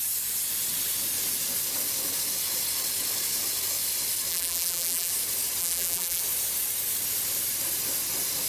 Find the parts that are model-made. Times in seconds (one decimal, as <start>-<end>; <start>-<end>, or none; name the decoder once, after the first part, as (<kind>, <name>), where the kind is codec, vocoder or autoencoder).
4.3-5.1 (vocoder, BigVGAN v2); 5.6-6.2